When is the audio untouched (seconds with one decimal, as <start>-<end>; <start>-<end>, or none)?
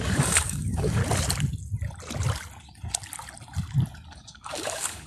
1.0-4.1